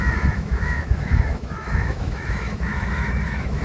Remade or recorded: remade